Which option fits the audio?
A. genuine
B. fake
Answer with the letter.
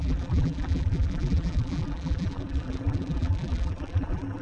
B